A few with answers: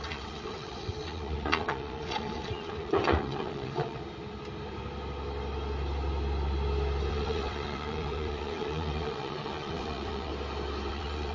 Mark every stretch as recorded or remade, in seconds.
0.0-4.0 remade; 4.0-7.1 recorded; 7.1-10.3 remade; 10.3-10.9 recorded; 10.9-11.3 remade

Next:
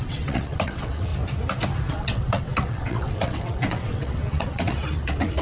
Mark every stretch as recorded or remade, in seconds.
0.0-1.1 remade; 1.1-1.9 recorded; 1.9-5.4 remade

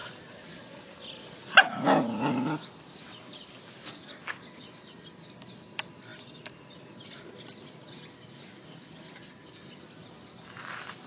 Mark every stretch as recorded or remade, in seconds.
0.0-11.1 recorded

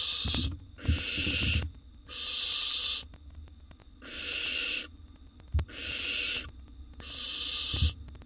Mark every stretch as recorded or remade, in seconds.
0.0-8.3 recorded

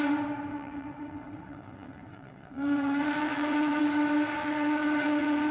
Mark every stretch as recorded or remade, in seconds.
0.0-0.5 recorded; 0.5-3.8 remade; 3.8-4.4 recorded; 4.4-5.5 remade

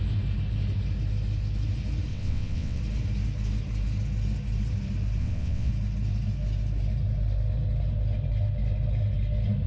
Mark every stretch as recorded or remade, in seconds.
0.0-2.1 recorded; 2.1-2.8 remade; 2.8-5.2 recorded; 5.2-5.7 remade; 5.7-9.7 recorded

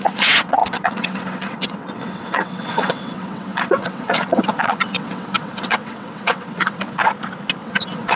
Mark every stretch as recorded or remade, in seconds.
0.0-7.0 remade; 7.0-7.6 recorded; 7.6-8.2 remade

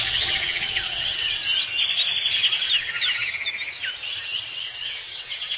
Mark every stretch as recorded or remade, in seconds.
0.0-1.4 remade; 1.4-4.5 recorded; 4.5-5.6 remade